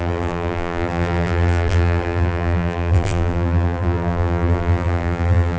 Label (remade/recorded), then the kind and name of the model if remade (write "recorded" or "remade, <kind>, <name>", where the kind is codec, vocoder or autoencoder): remade, vocoder, BigVGAN v2